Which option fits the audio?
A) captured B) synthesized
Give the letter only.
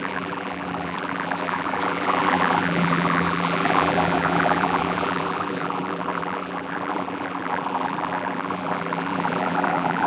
B